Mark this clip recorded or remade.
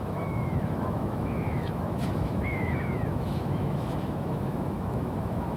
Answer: remade